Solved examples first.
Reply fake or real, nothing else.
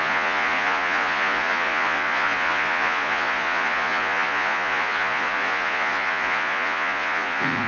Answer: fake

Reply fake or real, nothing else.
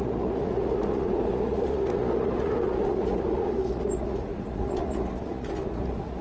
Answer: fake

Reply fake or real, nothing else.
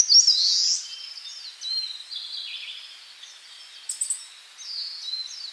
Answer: real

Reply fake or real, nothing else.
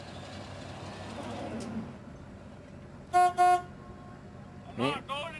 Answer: real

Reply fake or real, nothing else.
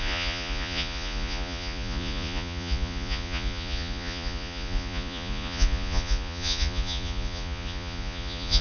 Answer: fake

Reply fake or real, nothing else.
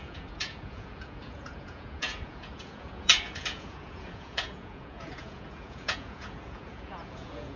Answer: fake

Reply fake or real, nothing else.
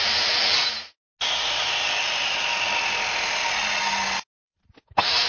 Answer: real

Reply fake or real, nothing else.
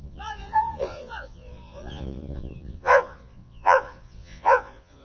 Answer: fake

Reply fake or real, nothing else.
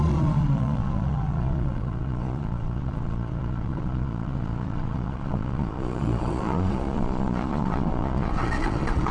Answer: fake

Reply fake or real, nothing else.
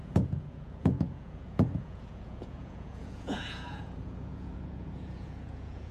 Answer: fake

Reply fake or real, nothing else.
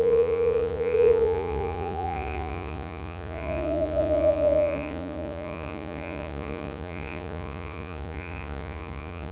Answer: fake